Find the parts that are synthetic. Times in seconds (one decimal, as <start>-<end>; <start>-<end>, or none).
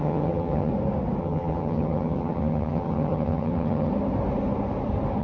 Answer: 0.0-0.7; 1.2-3.9